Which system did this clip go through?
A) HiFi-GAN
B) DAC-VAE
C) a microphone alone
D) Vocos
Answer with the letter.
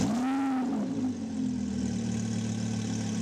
C